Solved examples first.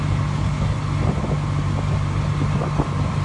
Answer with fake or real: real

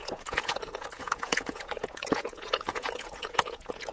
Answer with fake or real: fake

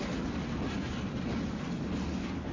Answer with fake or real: real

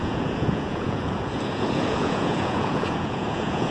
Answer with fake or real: fake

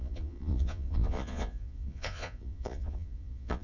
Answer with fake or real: fake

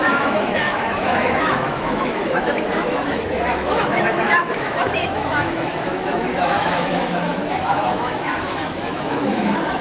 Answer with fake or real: fake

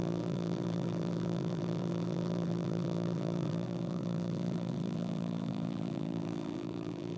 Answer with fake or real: fake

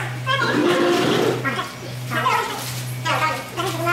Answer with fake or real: real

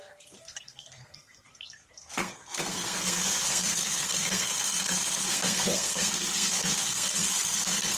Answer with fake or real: fake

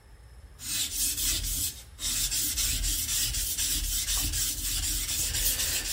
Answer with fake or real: real